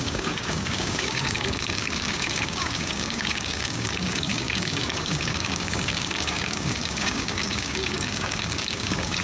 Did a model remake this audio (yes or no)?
yes